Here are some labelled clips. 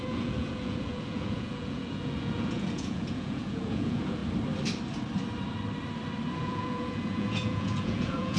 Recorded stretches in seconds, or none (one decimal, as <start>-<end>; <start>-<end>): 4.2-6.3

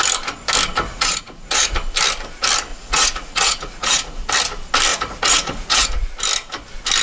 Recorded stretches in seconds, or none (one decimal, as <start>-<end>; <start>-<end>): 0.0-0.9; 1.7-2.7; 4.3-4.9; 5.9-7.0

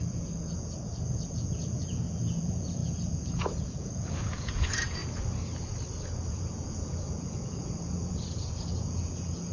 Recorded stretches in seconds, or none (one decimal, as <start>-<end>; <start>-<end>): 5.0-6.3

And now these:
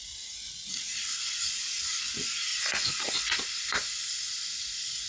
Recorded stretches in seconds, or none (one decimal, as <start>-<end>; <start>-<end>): 0.0-2.5; 3.4-5.1